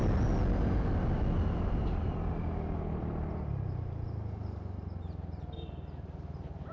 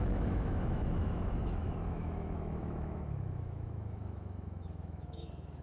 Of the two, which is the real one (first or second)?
first